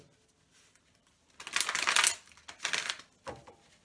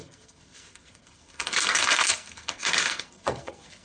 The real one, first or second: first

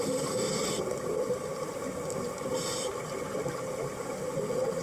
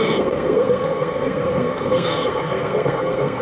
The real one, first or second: first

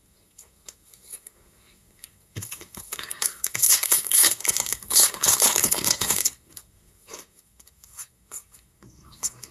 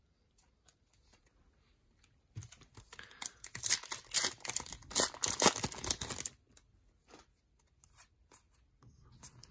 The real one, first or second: second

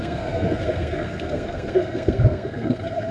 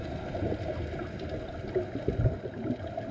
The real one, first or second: second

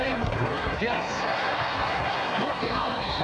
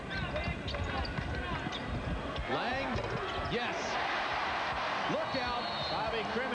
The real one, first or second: second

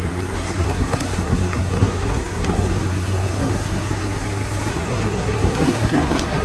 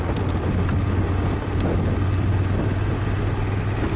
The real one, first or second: second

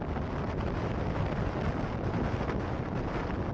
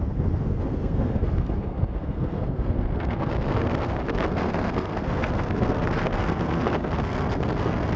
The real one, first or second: first